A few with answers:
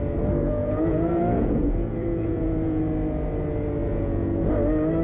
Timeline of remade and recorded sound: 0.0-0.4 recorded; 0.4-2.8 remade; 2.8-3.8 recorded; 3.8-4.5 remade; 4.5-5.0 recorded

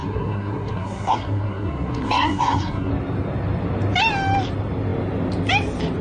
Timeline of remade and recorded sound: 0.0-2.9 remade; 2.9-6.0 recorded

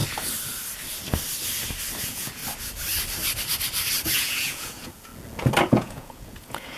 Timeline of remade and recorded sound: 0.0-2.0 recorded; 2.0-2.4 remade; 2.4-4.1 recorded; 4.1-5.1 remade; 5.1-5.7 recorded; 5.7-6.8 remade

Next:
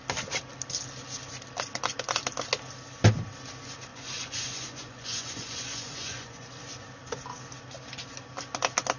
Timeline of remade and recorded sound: 0.0-3.9 recorded; 3.9-6.6 remade; 6.6-9.0 recorded

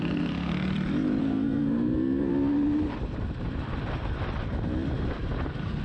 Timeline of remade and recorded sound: 0.0-0.5 remade; 0.5-1.2 recorded; 1.2-2.3 remade; 2.3-5.8 recorded

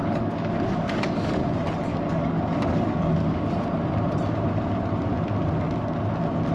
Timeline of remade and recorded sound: 0.0-1.4 remade; 1.4-1.9 recorded; 1.9-3.5 remade; 3.5-6.5 recorded

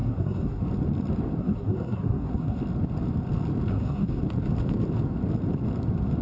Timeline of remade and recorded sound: 0.0-0.6 remade; 0.6-1.4 recorded; 1.4-2.6 remade; 2.6-3.7 recorded; 3.7-4.2 remade; 4.2-6.2 recorded

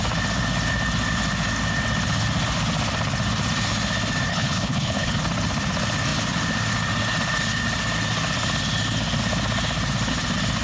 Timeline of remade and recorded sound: 0.0-4.3 recorded; 4.3-5.2 remade; 5.2-10.6 recorded